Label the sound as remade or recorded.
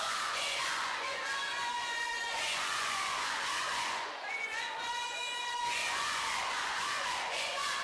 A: remade